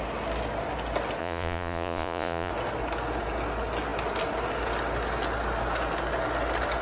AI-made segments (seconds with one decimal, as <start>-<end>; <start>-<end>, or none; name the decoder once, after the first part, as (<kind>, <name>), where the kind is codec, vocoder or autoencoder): 1.2-2.5 (vocoder, Vocos)